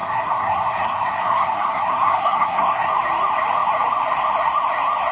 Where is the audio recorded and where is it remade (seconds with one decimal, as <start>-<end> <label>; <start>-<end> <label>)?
0.0-2.9 remade; 2.9-5.1 recorded